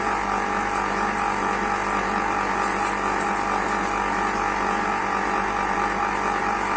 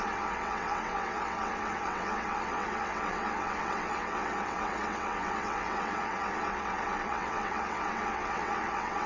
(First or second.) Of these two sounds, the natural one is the first